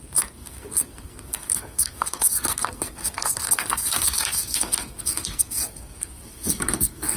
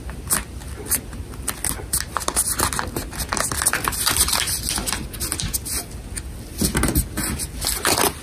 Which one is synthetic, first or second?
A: first